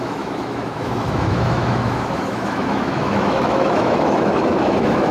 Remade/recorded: remade